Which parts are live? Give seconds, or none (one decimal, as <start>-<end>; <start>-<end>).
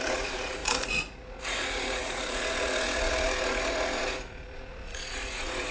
none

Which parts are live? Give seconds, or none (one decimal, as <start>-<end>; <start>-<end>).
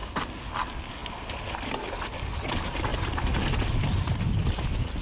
0.0-5.0